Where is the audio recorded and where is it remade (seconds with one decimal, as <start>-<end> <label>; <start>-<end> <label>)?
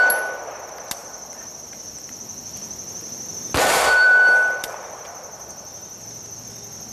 0.0-1.0 recorded; 1.0-5.1 remade; 5.1-6.9 recorded